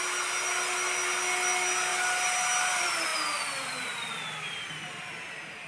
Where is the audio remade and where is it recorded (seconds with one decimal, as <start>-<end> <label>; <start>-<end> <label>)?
0.0-5.7 recorded